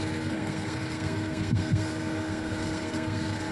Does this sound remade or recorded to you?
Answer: remade